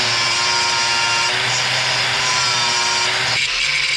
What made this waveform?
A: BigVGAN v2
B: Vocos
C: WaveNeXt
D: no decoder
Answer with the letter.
D